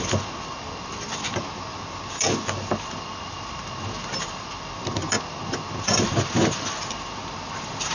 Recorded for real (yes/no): yes